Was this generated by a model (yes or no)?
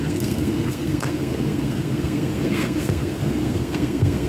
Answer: yes